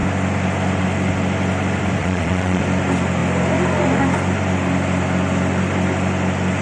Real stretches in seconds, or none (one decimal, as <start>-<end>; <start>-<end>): 0.0-2.0; 2.6-6.6